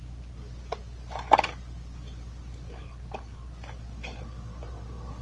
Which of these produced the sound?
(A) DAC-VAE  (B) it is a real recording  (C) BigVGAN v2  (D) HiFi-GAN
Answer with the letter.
B